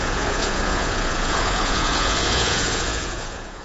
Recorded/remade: remade